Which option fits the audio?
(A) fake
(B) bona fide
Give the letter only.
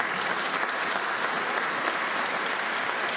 B